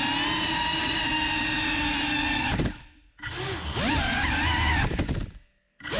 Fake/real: real